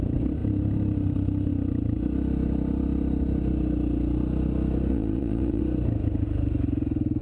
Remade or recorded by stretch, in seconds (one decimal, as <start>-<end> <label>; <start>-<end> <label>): 0.0-4.9 recorded; 4.9-5.6 remade; 5.6-7.2 recorded